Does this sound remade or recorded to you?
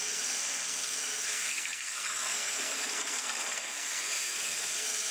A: remade